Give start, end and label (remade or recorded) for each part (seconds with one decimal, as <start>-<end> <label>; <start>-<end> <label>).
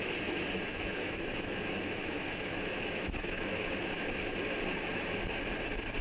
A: 0.0-0.7 recorded; 0.7-4.3 remade; 4.3-6.0 recorded